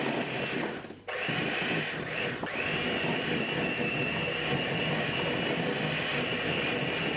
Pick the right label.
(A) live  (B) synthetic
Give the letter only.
A